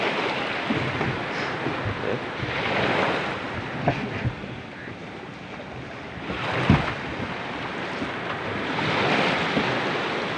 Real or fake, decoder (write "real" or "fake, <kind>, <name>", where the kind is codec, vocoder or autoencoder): real